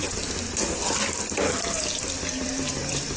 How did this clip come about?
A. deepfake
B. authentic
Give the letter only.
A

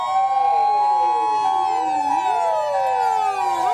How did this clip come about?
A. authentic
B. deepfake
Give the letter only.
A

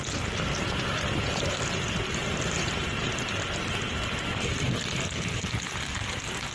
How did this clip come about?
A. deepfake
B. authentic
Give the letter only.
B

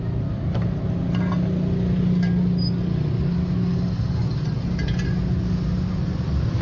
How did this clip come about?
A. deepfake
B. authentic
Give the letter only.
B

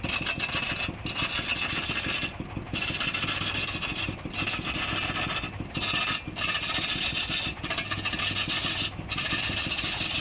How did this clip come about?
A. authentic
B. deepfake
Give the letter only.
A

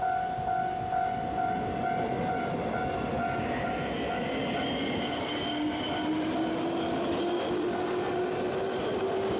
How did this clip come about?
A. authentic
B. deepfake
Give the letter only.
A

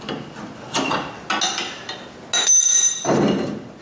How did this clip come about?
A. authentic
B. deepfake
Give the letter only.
A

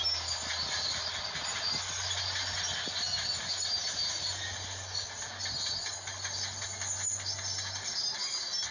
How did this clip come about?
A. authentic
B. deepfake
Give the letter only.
A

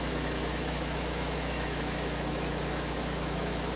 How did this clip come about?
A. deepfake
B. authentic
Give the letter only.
A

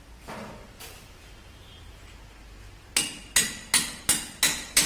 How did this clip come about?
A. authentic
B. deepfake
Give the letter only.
A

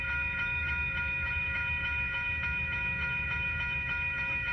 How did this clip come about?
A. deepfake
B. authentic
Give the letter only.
A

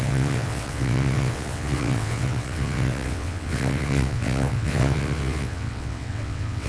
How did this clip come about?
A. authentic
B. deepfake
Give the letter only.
B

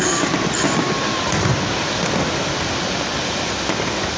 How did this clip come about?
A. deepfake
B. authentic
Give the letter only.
B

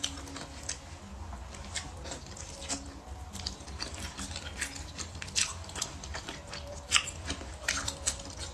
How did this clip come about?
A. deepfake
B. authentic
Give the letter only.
B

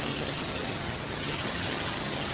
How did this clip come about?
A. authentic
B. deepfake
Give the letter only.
B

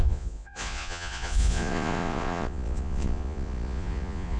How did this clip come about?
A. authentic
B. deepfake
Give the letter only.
B